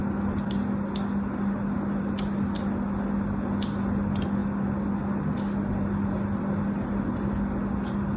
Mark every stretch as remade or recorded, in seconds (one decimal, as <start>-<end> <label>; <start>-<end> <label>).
0.0-8.2 recorded